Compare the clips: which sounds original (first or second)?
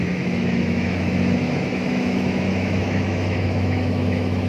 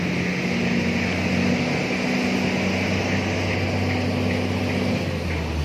second